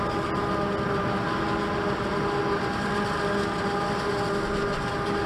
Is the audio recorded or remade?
recorded